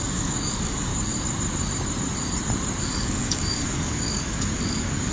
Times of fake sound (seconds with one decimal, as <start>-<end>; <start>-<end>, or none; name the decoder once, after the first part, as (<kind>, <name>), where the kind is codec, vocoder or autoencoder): 0.0-0.9 (codec, DAC); 2.8-5.1